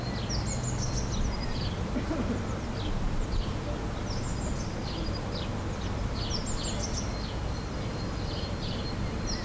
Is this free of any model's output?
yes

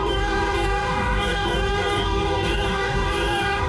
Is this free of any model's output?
no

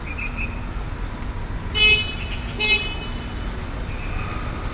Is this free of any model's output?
yes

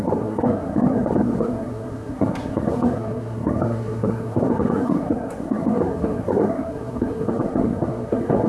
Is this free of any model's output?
no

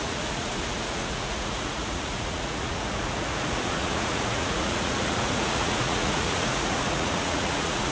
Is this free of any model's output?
no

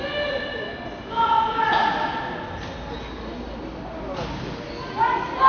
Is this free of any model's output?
yes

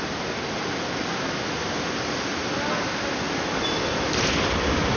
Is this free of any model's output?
yes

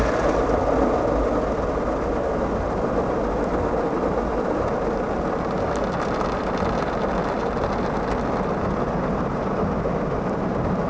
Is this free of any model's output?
yes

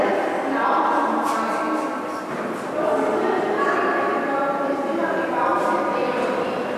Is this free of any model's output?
yes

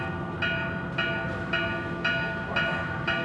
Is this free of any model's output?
yes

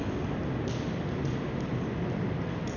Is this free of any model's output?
yes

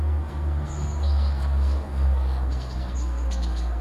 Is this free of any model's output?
no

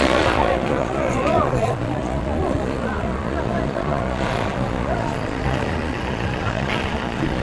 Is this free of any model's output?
no